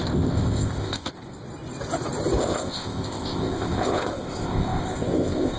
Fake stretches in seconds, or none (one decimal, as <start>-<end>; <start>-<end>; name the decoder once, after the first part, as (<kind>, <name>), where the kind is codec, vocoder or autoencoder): 0.0-1.1 (codec, ZipCodec); 2.4-5.6